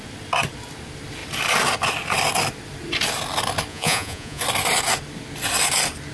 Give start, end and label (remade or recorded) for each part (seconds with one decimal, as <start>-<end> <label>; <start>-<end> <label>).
0.0-3.7 recorded; 3.7-4.4 remade; 4.4-6.1 recorded